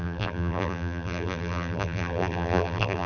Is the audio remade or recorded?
remade